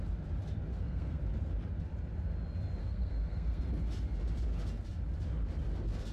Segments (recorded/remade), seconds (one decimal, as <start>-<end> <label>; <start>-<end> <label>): 0.0-0.7 recorded; 0.7-1.2 remade; 1.2-2.8 recorded; 2.8-3.6 remade; 3.6-6.1 recorded

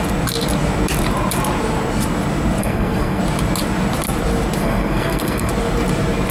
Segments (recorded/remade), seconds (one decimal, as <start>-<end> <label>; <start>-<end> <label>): 0.0-2.6 recorded; 2.6-3.2 remade; 3.2-4.6 recorded; 4.6-5.5 remade; 5.5-6.3 recorded

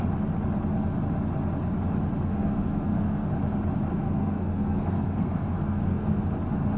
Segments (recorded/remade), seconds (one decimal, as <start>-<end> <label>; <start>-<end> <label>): 0.0-2.4 recorded; 2.4-3.3 remade; 3.3-3.9 recorded; 3.9-6.2 remade; 6.2-6.8 recorded

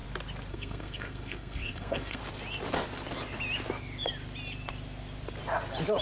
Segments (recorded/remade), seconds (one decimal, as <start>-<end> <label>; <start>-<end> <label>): 0.0-0.5 recorded; 0.5-2.2 remade; 2.2-6.0 recorded

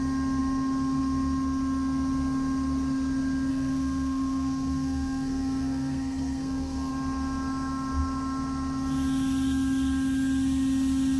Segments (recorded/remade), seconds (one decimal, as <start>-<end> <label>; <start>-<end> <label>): 0.0-3.5 recorded; 3.5-6.9 remade; 6.9-11.2 recorded

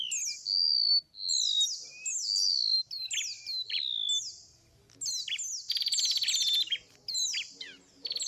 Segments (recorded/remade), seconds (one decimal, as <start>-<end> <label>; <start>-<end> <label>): 0.0-8.3 recorded